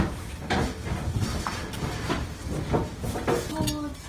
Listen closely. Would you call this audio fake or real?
real